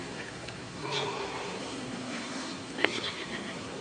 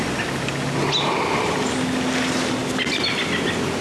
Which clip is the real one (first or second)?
second